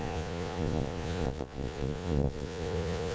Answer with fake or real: fake